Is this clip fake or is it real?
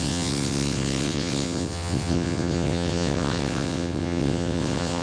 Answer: fake